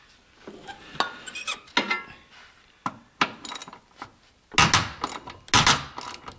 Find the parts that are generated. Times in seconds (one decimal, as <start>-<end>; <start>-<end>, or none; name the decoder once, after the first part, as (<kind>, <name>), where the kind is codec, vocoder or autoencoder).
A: none